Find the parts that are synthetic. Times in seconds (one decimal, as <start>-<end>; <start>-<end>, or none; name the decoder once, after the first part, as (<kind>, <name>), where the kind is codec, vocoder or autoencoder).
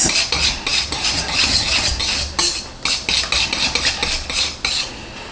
none